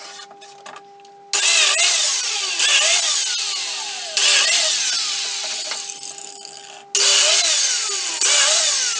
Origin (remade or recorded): recorded